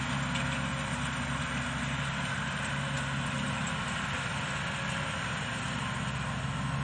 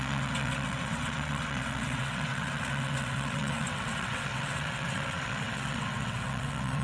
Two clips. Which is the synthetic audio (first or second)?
second